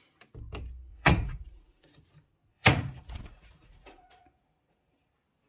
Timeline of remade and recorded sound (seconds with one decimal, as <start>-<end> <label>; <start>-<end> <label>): 0.0-0.9 recorded; 0.9-2.0 remade; 2.0-2.5 recorded; 2.5-5.1 remade; 5.1-5.5 recorded